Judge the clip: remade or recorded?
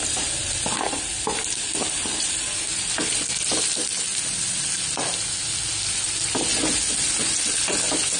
recorded